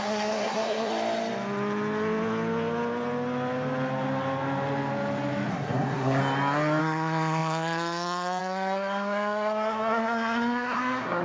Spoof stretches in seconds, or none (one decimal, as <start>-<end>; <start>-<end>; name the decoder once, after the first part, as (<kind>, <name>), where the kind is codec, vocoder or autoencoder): 0.0-0.9 (codec, SNAC); 5.5-6.2; 6.8-11.2